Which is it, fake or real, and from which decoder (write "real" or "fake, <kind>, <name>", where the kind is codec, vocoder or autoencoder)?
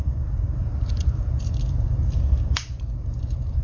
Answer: fake, vocoder, BigVGAN v2